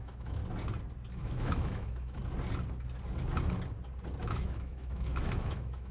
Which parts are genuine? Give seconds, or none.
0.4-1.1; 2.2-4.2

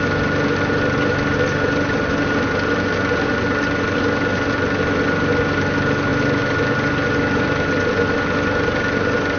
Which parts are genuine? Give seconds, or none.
0.0-9.4

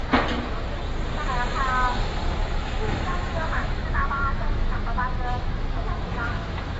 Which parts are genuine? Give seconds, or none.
0.0-2.4; 5.0-5.6

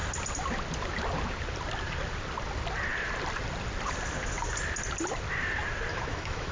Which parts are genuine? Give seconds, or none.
0.0-5.9

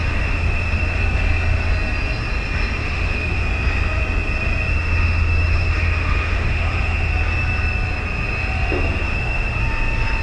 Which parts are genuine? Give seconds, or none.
1.0-2.8; 3.5-4.7; 7.1-9.0; 9.6-10.2

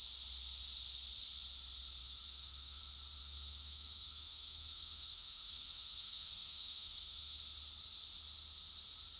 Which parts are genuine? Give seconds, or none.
0.0-2.0; 2.8-3.2; 7.4-9.2